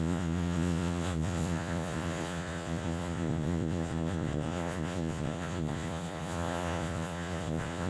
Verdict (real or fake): fake